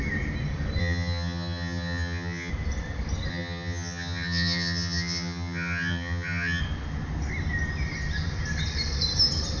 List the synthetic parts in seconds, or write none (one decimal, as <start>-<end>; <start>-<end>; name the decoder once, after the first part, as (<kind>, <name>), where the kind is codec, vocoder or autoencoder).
0.8-2.5 (vocoder, HiFi-GAN); 3.3-6.6